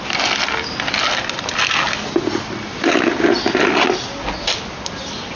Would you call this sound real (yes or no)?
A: yes